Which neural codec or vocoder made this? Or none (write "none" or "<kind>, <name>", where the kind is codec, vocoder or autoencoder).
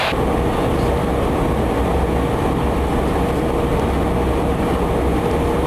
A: none